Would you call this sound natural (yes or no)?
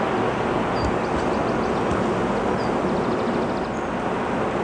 yes